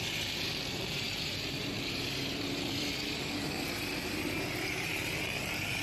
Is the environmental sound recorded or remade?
remade